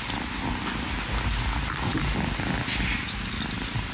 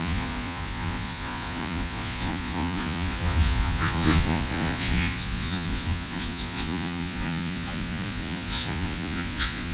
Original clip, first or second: first